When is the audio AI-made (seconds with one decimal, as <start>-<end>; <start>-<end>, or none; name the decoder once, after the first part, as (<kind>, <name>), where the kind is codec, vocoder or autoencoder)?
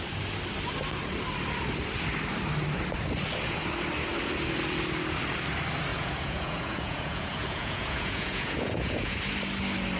5.9-9.2 (vocoder, Vocos)